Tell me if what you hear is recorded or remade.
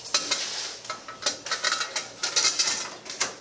recorded